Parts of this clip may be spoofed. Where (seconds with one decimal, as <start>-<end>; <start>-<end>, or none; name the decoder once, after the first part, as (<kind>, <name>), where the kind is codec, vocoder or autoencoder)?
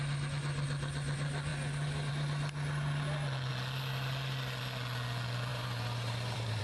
5.5-6.6 (vocoder, BigVGAN v2)